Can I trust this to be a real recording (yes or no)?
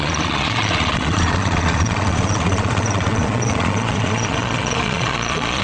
no